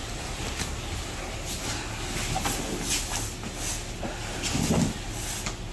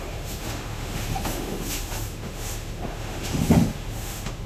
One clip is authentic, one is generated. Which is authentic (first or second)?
first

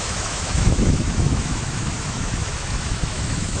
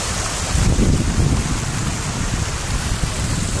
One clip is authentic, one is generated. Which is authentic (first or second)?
second